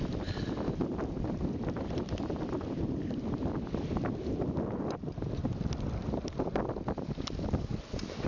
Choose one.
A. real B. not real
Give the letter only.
A